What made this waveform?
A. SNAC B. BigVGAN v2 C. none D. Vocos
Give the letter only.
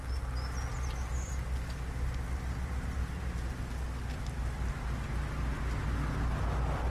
C